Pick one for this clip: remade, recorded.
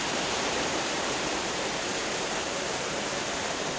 remade